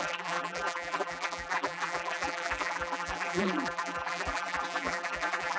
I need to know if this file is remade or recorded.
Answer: remade